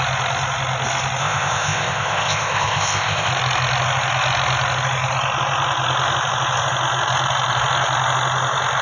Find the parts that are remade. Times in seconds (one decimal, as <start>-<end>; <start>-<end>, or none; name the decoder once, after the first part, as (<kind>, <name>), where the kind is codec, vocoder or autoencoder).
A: 1.2-3.3 (codec, ZipCodec)